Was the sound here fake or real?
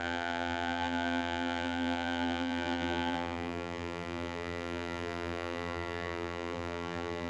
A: fake